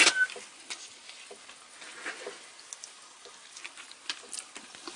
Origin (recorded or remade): recorded